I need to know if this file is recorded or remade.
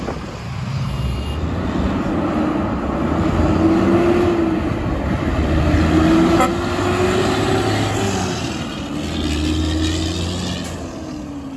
recorded